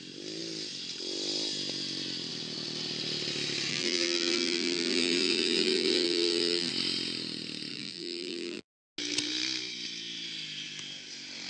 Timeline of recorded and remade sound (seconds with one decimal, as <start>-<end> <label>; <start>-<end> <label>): 0.0-3.7 recorded; 3.7-6.7 remade; 6.7-7.7 recorded; 7.7-8.8 remade; 8.8-11.5 recorded